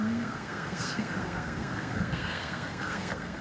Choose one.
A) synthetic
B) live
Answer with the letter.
A